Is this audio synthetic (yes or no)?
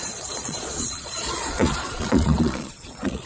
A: yes